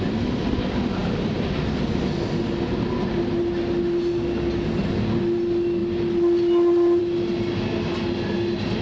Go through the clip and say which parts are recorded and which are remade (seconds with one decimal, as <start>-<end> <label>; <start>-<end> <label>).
0.0-8.8 recorded